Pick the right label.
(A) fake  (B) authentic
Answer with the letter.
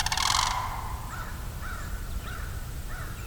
B